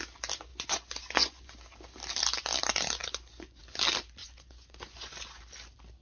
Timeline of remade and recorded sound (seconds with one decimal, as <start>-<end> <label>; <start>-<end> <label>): 0.0-0.5 recorded; 0.5-1.5 remade; 1.5-3.0 recorded; 3.0-3.6 remade; 3.6-4.2 recorded; 4.2-5.4 remade; 5.4-6.0 recorded